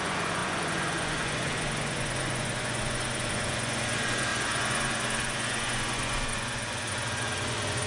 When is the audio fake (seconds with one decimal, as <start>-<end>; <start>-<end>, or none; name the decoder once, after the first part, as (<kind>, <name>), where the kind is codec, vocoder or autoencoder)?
0.0-7.9 (vocoder, Vocos)